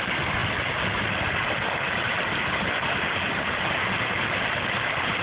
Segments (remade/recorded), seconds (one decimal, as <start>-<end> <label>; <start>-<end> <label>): 0.0-5.2 recorded

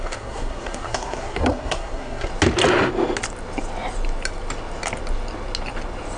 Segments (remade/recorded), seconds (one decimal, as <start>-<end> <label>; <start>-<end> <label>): 0.0-2.3 remade; 2.3-6.2 recorded

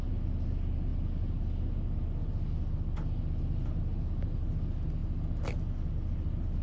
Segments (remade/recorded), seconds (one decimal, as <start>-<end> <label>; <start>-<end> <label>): 0.0-6.6 recorded

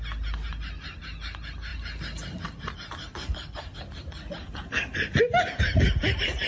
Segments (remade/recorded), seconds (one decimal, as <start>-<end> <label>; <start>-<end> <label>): 0.0-6.5 recorded

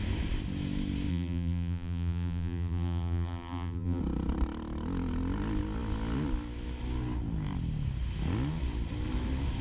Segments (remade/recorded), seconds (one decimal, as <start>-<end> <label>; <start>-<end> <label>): 0.0-1.1 recorded; 1.1-4.0 remade; 4.0-9.6 recorded